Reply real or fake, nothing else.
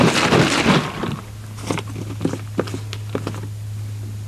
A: real